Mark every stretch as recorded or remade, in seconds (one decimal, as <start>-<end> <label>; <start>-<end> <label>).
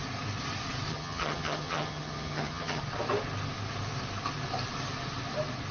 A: 0.0-0.9 recorded; 0.9-2.8 remade; 2.8-5.7 recorded